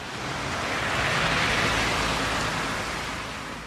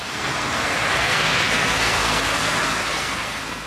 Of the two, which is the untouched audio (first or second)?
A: first